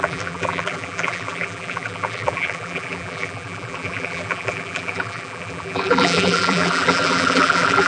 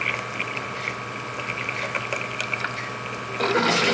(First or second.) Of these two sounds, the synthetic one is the first